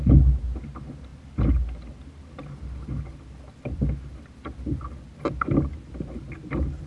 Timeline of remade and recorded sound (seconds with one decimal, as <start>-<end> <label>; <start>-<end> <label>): 0.0-6.9 recorded